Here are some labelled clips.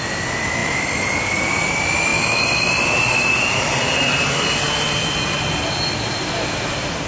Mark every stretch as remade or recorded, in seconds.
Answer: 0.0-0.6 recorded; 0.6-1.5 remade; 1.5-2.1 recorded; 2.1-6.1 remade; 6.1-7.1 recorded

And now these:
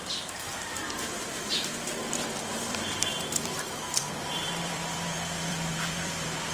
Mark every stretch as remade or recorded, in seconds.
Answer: 0.0-6.5 remade

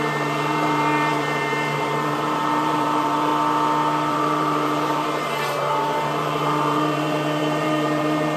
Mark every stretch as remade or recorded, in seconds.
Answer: 0.0-3.3 remade; 3.3-4.1 recorded; 4.1-8.4 remade

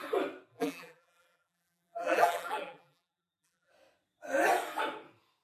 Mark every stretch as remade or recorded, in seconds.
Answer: 0.0-0.5 recorded; 0.5-3.7 remade; 3.7-5.4 recorded

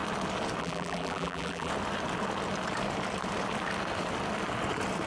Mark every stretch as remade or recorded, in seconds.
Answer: 0.0-0.6 recorded; 0.6-1.7 remade; 1.7-5.1 recorded

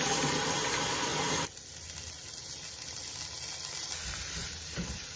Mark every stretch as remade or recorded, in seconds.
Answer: 0.0-5.2 recorded